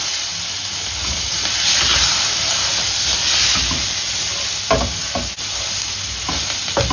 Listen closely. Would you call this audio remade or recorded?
recorded